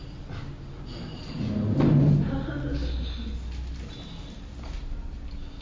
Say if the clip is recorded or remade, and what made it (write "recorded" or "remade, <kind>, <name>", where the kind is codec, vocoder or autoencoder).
recorded